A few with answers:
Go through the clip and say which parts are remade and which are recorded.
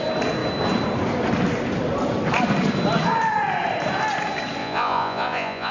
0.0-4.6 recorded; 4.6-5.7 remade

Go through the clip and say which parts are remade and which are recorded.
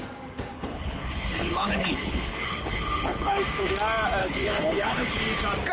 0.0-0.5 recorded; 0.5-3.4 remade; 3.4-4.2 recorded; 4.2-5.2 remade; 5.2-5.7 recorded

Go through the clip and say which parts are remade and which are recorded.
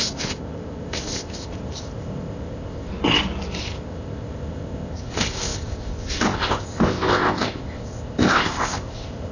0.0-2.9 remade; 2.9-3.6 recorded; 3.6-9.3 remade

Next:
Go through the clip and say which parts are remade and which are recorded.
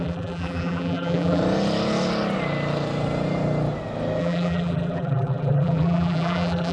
0.0-1.4 remade; 1.4-4.2 recorded; 4.2-6.7 remade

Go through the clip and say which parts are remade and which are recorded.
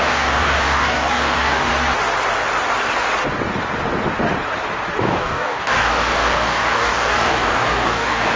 0.0-1.7 remade; 1.7-5.0 recorded; 5.0-8.4 remade